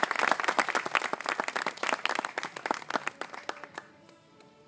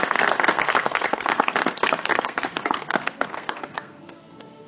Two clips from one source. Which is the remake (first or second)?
second